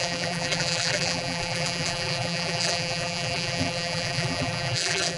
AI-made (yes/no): yes